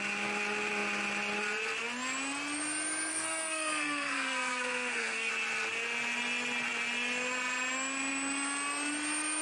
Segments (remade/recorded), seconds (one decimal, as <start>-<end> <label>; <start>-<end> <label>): 0.0-3.1 recorded; 3.1-5.3 remade; 5.3-9.4 recorded